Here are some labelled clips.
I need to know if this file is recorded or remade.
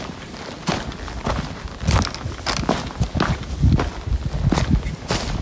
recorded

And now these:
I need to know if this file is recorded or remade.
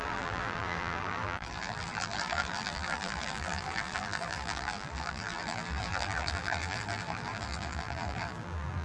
remade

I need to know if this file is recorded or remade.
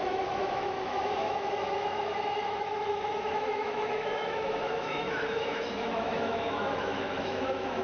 remade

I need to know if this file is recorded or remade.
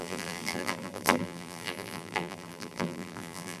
remade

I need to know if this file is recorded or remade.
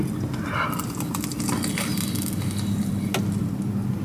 recorded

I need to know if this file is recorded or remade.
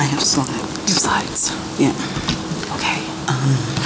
recorded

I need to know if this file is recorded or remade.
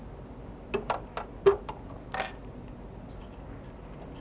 recorded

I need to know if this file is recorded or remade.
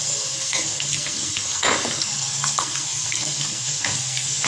remade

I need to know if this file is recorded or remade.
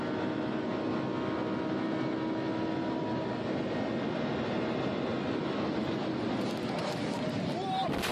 recorded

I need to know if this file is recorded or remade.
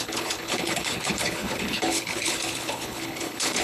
remade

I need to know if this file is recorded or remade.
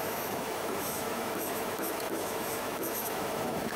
remade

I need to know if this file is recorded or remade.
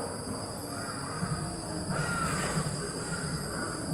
recorded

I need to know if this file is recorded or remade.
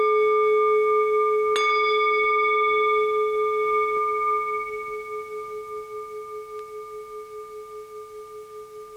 recorded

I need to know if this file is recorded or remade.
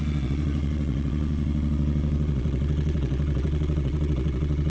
remade